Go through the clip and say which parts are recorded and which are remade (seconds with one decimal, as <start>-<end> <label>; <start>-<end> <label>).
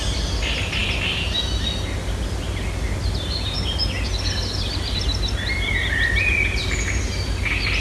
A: 0.0-7.8 recorded